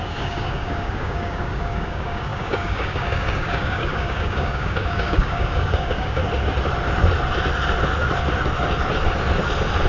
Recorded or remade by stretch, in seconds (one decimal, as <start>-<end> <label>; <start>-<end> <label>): 0.0-6.2 remade; 6.2-9.9 recorded